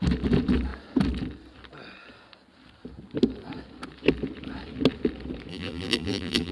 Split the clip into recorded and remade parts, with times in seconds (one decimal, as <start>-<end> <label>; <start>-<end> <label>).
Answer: 0.0-5.5 recorded; 5.5-6.5 remade